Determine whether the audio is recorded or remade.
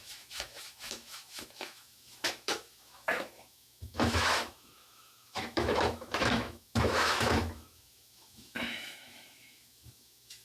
remade